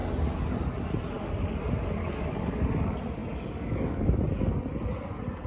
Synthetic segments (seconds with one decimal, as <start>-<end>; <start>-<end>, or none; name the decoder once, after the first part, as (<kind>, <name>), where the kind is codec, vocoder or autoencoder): 2.0-2.5 (codec, DAC); 3.2-4.2